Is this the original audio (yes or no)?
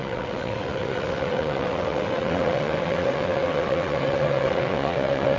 no